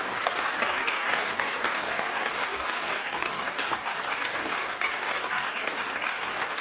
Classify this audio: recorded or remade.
remade